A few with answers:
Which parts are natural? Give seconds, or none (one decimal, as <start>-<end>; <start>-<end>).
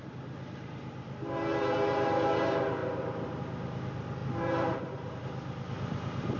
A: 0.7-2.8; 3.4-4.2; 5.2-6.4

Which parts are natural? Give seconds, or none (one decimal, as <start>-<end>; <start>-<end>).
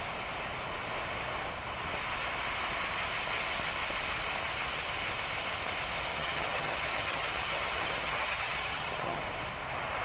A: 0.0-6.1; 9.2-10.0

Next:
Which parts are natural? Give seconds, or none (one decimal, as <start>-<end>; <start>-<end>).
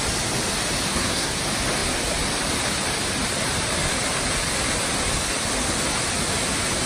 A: 0.0-0.9; 1.4-6.9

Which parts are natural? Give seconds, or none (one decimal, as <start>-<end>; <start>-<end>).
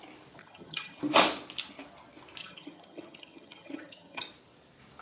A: 0.0-0.4; 1.0-2.4; 4.3-5.0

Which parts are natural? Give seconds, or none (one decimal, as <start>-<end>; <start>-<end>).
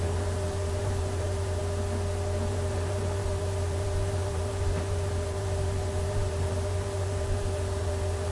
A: 1.6-2.5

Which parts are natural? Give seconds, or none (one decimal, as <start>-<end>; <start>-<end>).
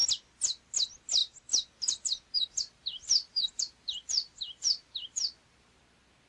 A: 0.0-2.3; 5.8-6.3